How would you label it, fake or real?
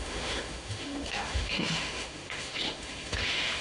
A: fake